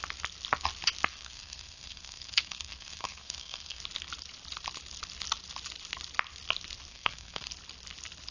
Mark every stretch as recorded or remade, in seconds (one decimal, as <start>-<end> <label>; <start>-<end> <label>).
0.0-1.1 recorded; 1.1-3.8 remade; 3.8-6.9 recorded; 6.9-7.5 remade; 7.5-8.3 recorded